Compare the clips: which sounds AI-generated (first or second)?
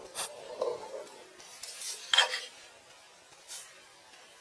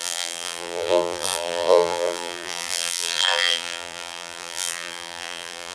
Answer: second